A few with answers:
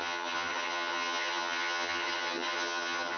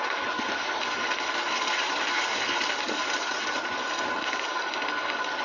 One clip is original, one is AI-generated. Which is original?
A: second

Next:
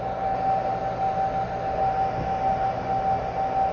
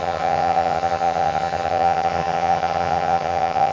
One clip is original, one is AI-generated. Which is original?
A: first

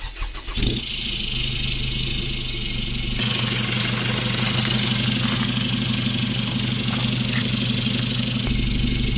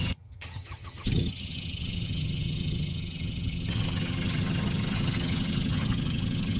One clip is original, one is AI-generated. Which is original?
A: first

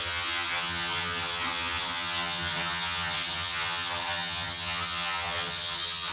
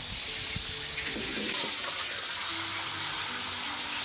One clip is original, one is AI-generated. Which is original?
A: second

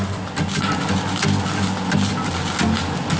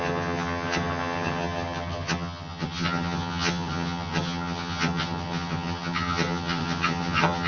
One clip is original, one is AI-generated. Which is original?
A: first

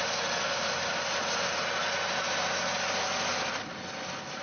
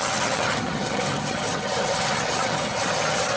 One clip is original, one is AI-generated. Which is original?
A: first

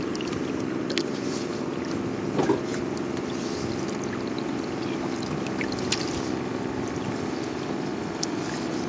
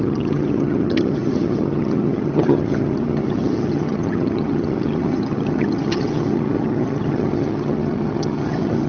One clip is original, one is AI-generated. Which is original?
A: first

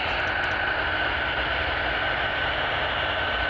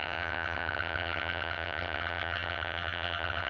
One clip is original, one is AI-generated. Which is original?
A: first